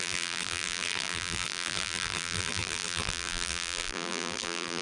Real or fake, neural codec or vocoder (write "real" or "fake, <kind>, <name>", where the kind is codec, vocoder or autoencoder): fake, vocoder, BigVGAN v2